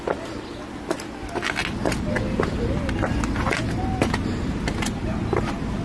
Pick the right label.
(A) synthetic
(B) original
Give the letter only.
B